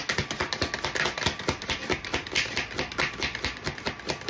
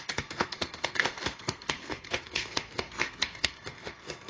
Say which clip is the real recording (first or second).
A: first